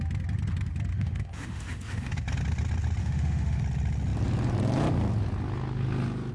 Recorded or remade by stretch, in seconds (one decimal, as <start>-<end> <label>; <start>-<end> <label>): 0.0-0.9 recorded; 0.9-2.1 remade; 2.1-3.0 recorded; 3.0-3.6 remade; 3.6-6.3 recorded